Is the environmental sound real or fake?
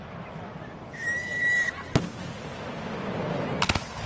real